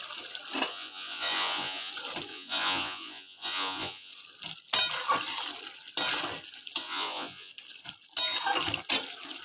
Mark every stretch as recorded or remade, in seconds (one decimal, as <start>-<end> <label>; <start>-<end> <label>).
0.0-0.7 recorded; 0.7-1.9 remade; 1.9-2.3 recorded; 2.3-4.1 remade; 4.1-6.8 recorded; 6.8-7.5 remade; 7.5-9.4 recorded